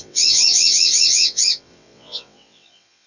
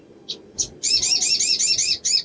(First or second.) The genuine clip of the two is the second